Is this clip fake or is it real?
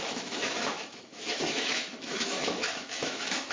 fake